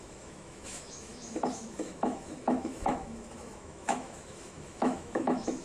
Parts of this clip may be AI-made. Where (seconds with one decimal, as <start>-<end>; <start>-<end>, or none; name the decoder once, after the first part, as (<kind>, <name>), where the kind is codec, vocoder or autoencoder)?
0.0-5.6 (autoencoder, DAC-VAE)